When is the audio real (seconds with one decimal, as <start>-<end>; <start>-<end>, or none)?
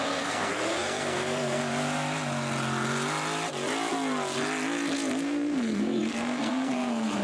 1.6-5.2